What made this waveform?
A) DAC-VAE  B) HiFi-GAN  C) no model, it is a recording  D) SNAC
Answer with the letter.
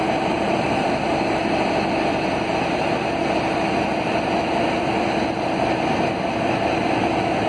C